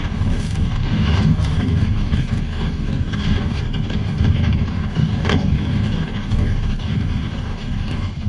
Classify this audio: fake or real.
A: fake